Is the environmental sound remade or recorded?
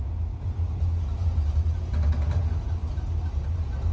recorded